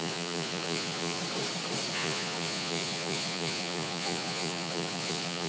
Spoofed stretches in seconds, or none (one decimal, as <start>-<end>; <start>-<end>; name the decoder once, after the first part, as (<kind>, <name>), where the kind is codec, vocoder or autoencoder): 0.0-1.2 (vocoder, Vocos); 1.9-5.5